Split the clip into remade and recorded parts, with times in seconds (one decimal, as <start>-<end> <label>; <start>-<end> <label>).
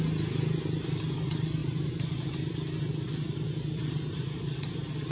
0.0-1.6 recorded; 1.6-2.9 remade; 2.9-5.1 recorded